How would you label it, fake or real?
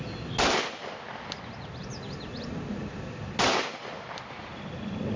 real